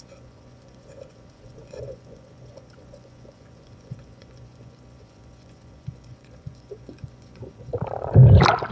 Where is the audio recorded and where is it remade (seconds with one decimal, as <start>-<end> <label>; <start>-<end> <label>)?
0.0-7.7 remade; 7.7-8.7 recorded